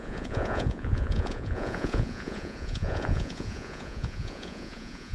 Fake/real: fake